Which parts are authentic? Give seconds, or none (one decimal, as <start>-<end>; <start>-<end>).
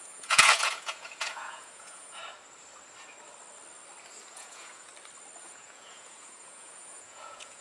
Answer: 2.2-4.3; 4.9-5.4